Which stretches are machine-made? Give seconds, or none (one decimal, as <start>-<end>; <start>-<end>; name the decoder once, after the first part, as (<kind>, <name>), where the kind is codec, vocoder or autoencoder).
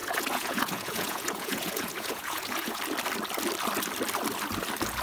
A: 0.0-2.8 (vocoder, Vocos)